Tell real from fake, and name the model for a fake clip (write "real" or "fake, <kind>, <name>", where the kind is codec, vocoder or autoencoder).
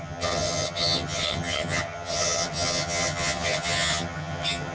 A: fake, vocoder, HiFi-GAN